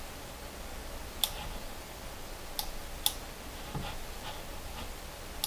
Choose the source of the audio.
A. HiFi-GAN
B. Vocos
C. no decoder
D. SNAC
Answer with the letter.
C